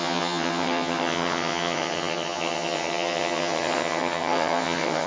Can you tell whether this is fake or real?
fake